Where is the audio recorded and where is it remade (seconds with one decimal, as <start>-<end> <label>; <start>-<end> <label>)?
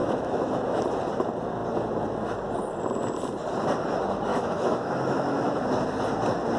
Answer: 0.0-0.8 remade; 0.8-4.3 recorded; 4.3-5.6 remade; 5.6-6.6 recorded